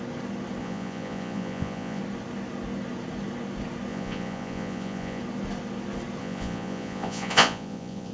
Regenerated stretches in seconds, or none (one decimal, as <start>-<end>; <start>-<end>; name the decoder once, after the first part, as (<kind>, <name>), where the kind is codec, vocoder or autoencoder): 0.6-2.0 (vocoder, Vocos); 3.9-5.2; 6.2-8.1